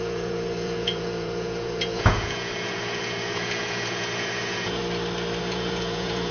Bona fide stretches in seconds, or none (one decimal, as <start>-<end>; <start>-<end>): 4.8-5.4